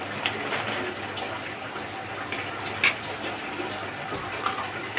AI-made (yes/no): no